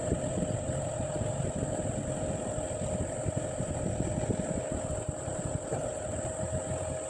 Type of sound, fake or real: real